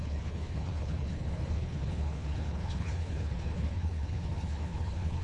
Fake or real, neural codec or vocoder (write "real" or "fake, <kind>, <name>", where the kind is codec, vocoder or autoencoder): fake, codec, HILCodec